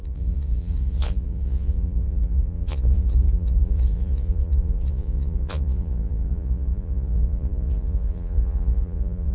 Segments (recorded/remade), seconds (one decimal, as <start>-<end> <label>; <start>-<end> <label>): 0.0-9.3 remade